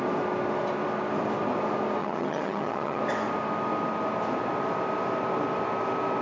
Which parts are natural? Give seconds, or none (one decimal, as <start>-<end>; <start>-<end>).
0.0-2.0; 3.0-6.2